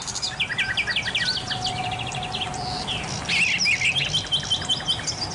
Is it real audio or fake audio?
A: real